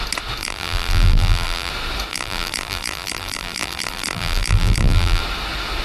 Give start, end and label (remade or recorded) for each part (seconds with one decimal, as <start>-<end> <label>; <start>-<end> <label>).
0.0-0.4 recorded; 0.4-1.7 remade; 1.7-2.1 recorded; 2.1-5.2 remade; 5.2-5.8 recorded